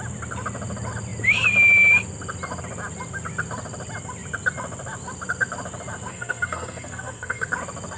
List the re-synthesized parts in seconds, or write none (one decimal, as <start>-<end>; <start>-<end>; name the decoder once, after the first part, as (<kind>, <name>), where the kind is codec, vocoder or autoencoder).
6.1-7.5 (codec, SNAC)